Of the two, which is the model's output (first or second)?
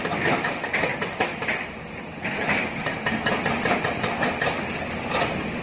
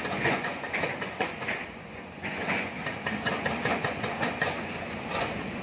second